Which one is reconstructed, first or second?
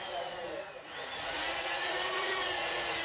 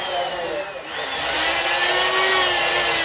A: first